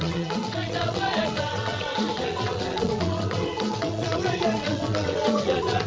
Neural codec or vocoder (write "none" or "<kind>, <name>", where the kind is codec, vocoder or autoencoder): vocoder, WaveNeXt